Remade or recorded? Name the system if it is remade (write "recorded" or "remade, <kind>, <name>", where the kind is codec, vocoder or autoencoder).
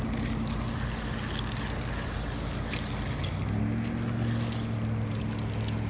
recorded